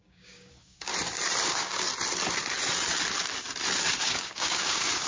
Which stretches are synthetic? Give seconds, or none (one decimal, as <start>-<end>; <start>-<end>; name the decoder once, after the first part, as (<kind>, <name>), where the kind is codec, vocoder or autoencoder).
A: 0.0-0.9 (codec, DAC); 1.5-1.9; 4.0-5.1